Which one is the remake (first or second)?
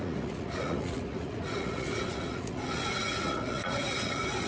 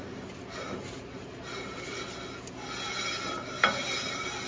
first